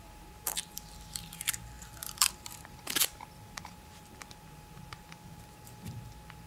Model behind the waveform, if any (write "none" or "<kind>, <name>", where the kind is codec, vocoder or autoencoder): vocoder, BigVGAN v2